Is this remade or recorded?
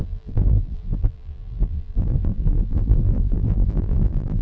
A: remade